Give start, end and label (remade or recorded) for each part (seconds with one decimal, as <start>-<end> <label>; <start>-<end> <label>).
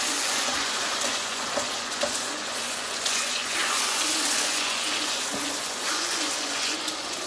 0.0-7.3 remade